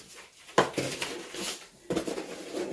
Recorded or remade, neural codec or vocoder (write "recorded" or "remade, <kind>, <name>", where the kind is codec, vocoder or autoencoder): recorded